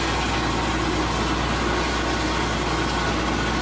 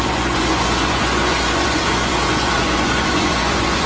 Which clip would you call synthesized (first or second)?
second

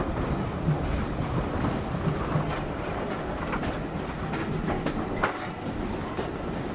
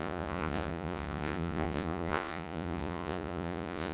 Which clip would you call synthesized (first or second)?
second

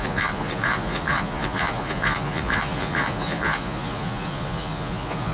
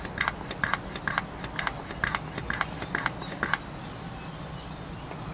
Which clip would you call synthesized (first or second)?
first